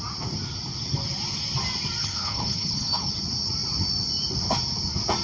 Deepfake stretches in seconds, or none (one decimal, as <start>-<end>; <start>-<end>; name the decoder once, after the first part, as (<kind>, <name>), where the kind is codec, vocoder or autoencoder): 2.0-3.1 (codec, HILCodec)